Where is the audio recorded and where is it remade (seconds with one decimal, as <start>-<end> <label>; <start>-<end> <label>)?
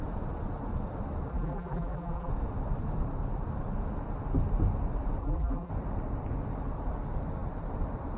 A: 0.0-1.3 recorded; 1.3-2.3 remade; 2.3-5.2 recorded; 5.2-5.7 remade; 5.7-8.2 recorded